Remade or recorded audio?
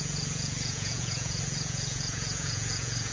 remade